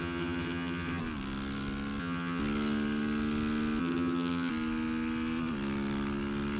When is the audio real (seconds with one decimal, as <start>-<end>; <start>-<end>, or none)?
1.0-2.0; 2.4-3.8; 4.5-6.6